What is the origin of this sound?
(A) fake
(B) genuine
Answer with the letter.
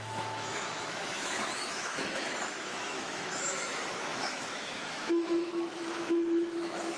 A